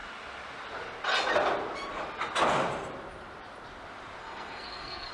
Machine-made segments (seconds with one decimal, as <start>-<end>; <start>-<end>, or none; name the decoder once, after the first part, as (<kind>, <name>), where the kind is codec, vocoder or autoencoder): 4.2-5.1 (codec, SNAC)